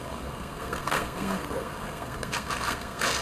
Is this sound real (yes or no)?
no